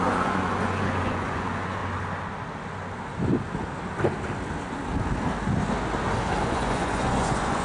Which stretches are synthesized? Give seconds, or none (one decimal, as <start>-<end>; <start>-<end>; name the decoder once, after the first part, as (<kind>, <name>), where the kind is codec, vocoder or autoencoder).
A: 0.0-1.8 (vocoder, Vocos); 6.4-7.6